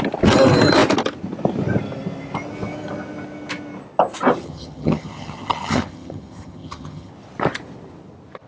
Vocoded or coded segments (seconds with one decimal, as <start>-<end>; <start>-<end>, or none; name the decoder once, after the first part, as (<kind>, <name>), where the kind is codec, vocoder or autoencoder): 4.4-7.1 (vocoder, HiFi-GAN)